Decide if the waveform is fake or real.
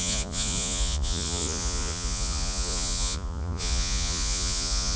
fake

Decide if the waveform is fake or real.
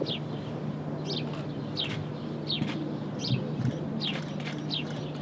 real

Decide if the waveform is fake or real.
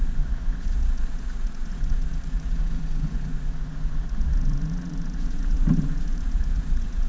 fake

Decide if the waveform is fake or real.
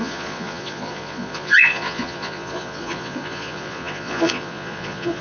fake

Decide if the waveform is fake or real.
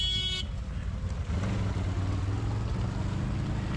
real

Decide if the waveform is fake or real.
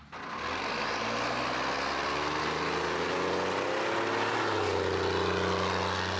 real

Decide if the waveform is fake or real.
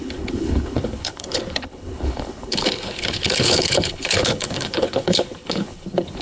fake